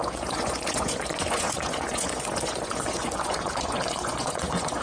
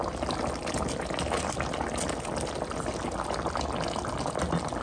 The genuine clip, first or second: second